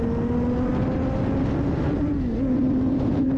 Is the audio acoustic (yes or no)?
yes